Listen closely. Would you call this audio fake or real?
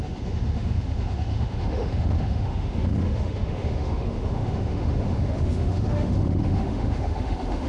fake